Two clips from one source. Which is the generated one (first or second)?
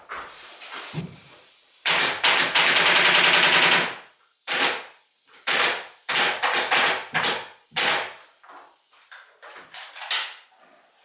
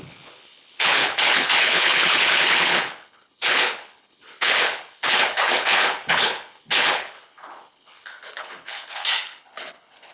second